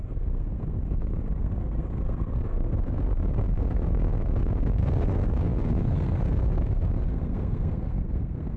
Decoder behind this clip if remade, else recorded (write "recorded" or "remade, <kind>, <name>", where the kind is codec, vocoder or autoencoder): remade, codec, SNAC